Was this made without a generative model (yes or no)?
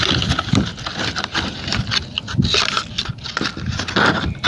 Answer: yes